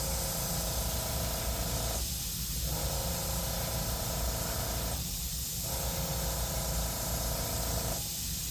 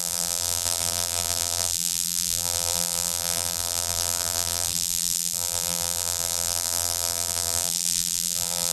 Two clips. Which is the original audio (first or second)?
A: first